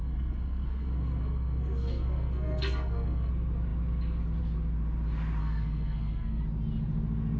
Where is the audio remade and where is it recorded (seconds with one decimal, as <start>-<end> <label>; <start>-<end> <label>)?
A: 0.0-3.3 remade; 3.3-5.4 recorded; 5.4-6.4 remade; 6.4-7.4 recorded